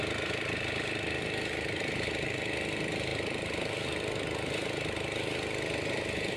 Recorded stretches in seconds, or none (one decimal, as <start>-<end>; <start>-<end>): 0.0-6.4